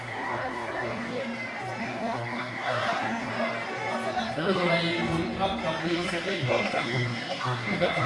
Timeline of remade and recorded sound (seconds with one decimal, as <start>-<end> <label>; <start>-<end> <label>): 0.0-1.2 remade; 1.2-1.8 recorded; 1.8-3.3 remade; 3.3-4.2 recorded; 4.2-4.7 remade; 4.7-5.8 recorded; 5.8-8.1 remade